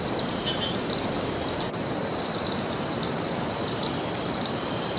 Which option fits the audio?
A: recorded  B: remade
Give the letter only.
A